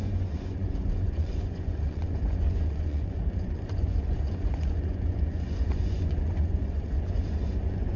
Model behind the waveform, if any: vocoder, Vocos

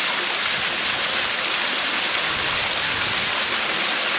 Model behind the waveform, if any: none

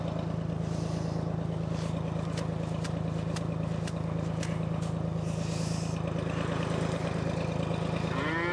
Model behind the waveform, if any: none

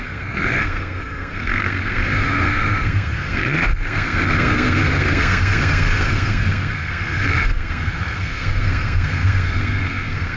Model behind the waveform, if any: codec, SNAC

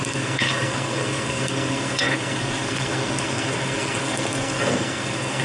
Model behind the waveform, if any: codec, SNAC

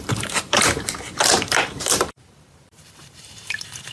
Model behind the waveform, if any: vocoder, BigVGAN v2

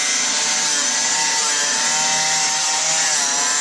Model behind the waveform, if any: none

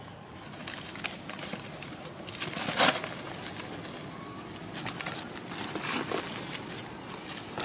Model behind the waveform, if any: none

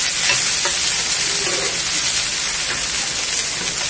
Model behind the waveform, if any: none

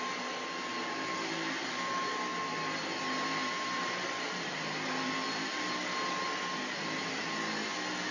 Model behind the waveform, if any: none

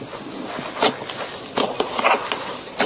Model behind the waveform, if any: none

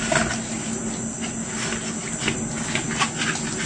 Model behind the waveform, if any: none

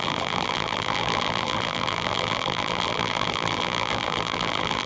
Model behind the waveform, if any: vocoder, BigVGAN v2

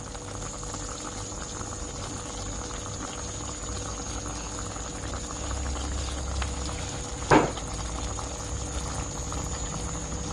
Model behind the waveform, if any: none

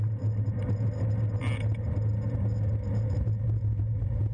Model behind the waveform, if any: none